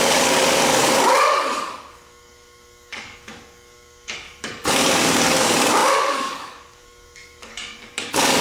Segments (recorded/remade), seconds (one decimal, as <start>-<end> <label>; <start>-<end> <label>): 0.0-8.4 remade